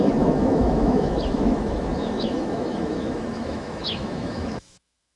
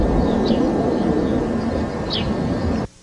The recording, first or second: second